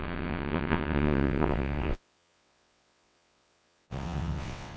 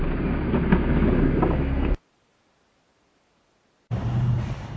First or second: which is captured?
second